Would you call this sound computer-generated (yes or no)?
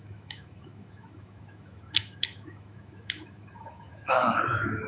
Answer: yes